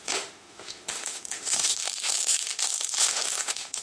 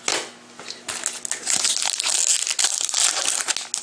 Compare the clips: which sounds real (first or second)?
second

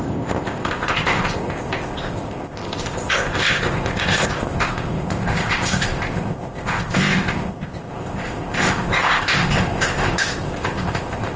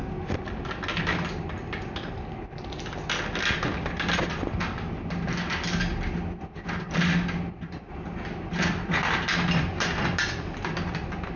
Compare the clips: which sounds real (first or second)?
second